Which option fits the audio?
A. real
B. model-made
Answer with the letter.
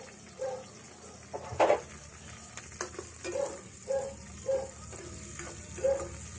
A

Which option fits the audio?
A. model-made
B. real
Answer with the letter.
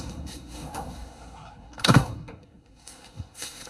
A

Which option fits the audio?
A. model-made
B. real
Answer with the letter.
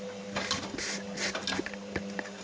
B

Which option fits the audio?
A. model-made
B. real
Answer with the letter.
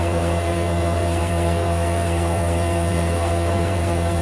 A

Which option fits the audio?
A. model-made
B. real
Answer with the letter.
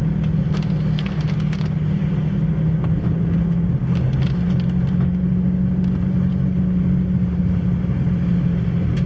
B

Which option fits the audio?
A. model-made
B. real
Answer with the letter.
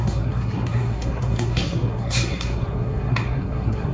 A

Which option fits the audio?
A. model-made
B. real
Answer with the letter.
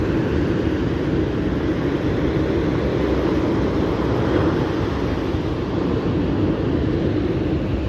B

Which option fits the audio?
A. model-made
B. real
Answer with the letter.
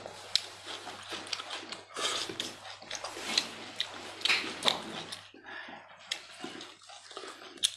B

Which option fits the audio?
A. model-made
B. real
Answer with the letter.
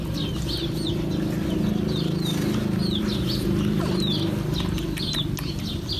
B